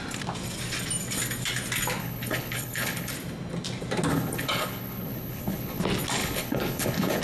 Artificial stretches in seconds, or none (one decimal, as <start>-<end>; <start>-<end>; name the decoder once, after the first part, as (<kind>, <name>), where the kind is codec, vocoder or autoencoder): 2.0-3.1 (codec, HILCodec); 4.1-5.8; 6.2-7.2